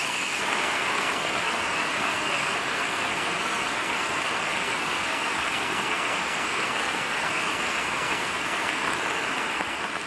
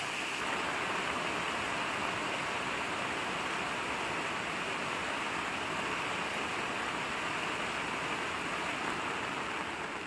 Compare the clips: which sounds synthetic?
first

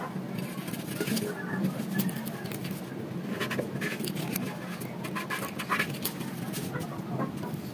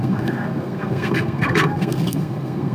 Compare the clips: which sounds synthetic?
second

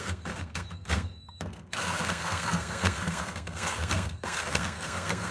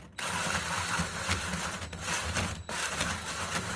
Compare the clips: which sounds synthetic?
first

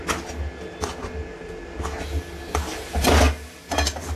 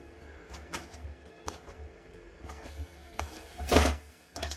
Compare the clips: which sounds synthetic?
second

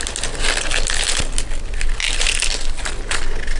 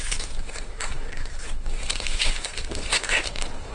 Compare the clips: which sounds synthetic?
second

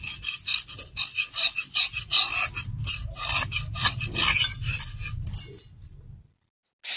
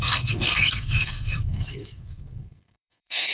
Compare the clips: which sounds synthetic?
second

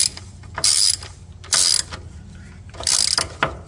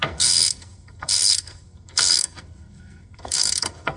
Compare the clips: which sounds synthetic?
second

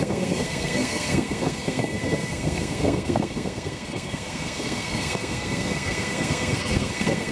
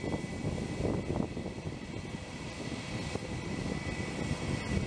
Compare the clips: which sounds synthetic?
first